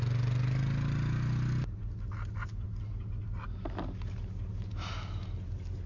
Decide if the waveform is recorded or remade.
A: recorded